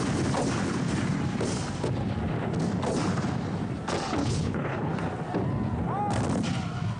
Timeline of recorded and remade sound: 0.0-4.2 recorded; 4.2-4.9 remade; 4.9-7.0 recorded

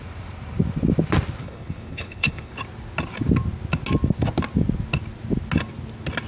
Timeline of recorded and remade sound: 0.0-1.4 recorded; 1.4-2.6 remade; 2.6-6.3 recorded

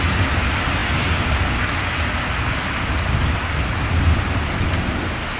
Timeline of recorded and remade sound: 0.0-5.4 recorded

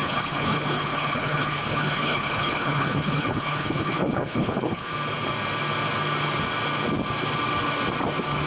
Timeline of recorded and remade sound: 0.0-4.9 remade; 4.9-8.5 recorded

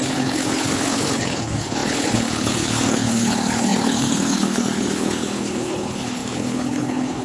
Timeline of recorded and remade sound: 0.0-7.2 remade